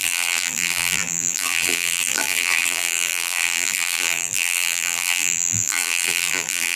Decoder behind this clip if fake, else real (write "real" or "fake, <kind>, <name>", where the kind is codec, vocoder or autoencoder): fake, vocoder, BigVGAN v2